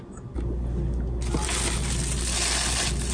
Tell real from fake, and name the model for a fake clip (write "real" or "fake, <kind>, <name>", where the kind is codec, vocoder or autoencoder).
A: real